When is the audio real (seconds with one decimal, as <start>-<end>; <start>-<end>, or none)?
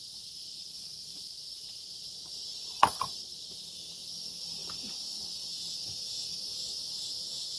0.0-0.4; 3.5-7.6